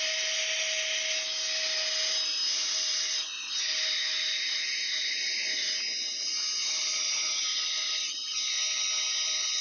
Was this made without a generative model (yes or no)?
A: yes